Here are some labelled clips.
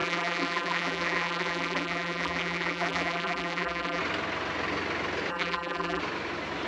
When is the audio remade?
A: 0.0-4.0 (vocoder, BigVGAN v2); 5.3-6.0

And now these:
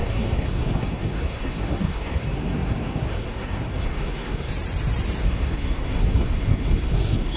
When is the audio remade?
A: 0.0-4.5 (codec, SNAC); 5.2-7.4

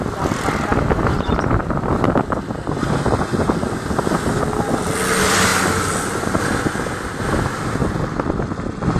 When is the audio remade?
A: none

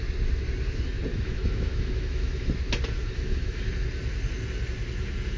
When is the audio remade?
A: 1.1-2.5 (autoencoder, DAC-VAE); 3.0-3.6

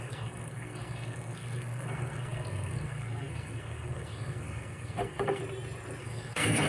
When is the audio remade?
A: 0.0-5.4 (codec, SNAC); 6.0-6.7

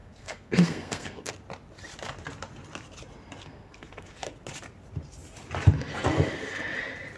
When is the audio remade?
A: 0.0-1.3 (codec, SNAC); 3.4-4.3